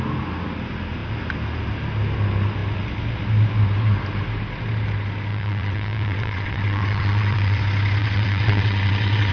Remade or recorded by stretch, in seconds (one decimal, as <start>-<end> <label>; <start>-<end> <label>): 0.0-5.3 recorded; 5.3-7.6 remade; 7.6-8.0 recorded; 8.0-9.3 remade